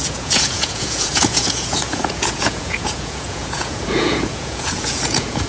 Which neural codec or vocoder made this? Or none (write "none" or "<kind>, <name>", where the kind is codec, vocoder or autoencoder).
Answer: vocoder, Vocos